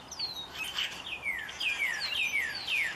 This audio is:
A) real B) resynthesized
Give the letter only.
A